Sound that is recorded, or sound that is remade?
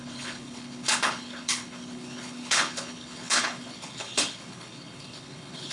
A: remade